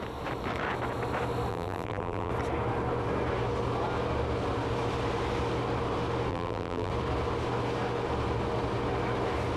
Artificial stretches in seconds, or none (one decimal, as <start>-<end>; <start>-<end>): 1.5-2.3; 6.3-6.9